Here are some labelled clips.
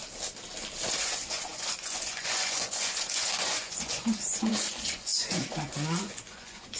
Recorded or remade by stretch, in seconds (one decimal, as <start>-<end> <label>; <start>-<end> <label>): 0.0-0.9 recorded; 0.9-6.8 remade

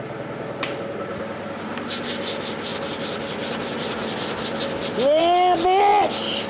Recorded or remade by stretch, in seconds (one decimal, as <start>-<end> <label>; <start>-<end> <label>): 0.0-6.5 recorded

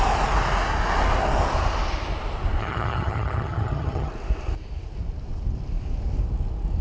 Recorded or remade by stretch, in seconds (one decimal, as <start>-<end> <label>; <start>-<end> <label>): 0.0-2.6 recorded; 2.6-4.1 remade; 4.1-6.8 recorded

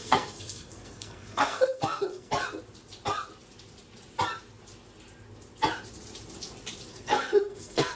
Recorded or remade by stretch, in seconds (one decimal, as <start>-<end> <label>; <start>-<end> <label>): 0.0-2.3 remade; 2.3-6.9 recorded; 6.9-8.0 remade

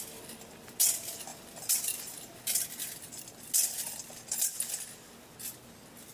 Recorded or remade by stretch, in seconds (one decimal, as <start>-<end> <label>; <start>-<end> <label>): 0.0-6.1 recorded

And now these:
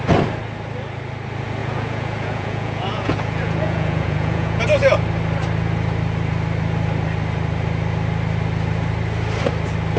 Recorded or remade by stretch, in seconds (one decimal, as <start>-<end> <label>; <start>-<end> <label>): 0.0-1.6 recorded; 1.6-4.6 remade; 4.6-10.0 recorded